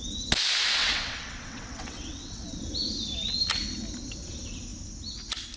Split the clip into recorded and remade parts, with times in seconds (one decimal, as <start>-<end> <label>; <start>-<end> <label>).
0.0-0.8 recorded; 0.8-2.6 remade; 2.6-5.6 recorded